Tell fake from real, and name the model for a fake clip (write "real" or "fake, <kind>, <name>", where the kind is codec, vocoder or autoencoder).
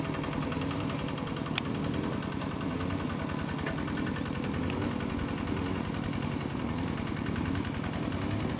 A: real